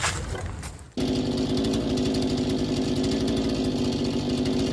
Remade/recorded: recorded